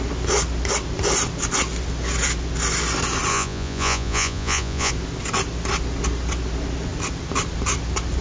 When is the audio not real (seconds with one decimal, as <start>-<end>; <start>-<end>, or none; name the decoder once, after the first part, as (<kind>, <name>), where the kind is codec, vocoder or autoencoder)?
3.3-4.9 (vocoder, Vocos)